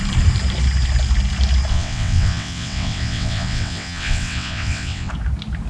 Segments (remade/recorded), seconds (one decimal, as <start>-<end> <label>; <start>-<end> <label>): 0.0-1.7 recorded; 1.7-5.1 remade; 5.1-5.7 recorded